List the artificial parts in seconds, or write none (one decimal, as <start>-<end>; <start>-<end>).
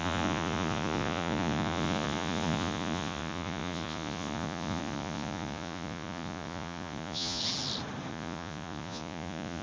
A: 0.0-7.4; 8.1-9.6